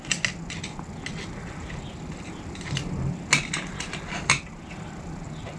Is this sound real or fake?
real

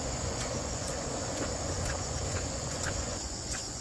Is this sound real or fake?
fake